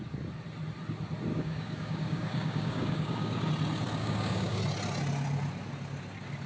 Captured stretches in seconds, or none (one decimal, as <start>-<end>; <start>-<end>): 0.0-1.3; 3.5-4.0; 4.6-6.5